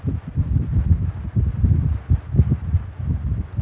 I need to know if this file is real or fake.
real